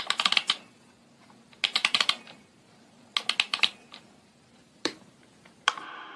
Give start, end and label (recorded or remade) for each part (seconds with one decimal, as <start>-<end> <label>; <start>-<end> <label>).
0.0-1.8 recorded; 1.8-2.8 remade; 2.8-3.5 recorded; 3.5-6.2 remade